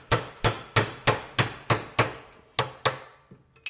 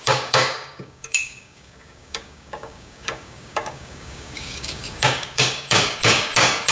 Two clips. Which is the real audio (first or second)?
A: first